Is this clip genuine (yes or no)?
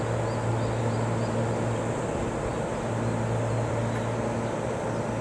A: yes